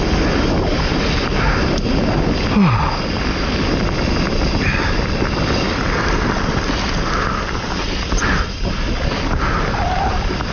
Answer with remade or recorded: recorded